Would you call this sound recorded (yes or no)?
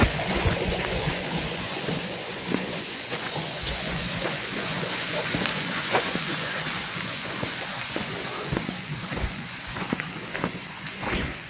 no